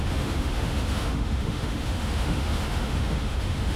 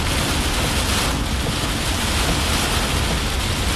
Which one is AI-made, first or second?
first